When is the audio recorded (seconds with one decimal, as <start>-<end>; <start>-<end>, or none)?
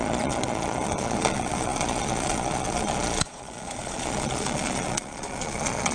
none